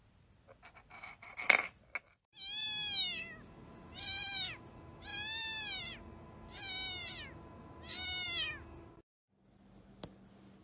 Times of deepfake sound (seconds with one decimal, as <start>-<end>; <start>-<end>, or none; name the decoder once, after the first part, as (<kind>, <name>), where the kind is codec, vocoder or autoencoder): none